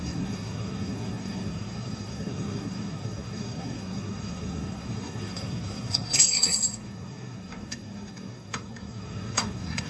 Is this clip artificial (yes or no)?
yes